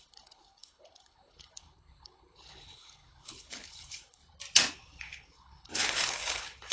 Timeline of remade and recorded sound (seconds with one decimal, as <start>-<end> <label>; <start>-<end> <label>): 0.0-4.2 remade; 4.2-4.7 recorded; 4.7-6.7 remade